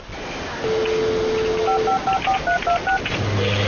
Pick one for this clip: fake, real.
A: real